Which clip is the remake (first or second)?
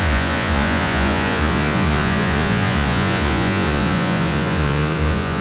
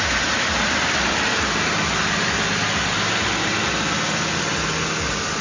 first